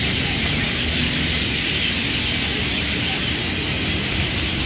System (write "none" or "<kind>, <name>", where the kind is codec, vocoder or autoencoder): none